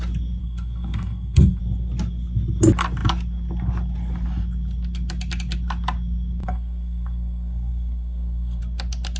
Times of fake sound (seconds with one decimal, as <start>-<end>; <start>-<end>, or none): 0.4-1.6; 6.4-8.6